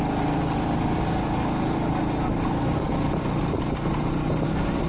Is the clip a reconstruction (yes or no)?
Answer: no